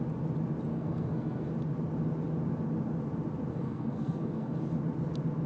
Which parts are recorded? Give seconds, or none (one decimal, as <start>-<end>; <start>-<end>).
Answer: 0.0-0.7; 1.5-3.5; 4.6-5.5